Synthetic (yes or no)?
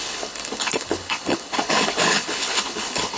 yes